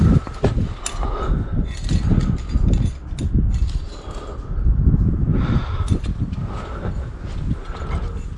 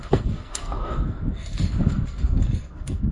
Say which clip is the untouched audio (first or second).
first